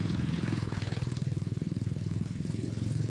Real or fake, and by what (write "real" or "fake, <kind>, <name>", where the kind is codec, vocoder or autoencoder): fake, codec, HILCodec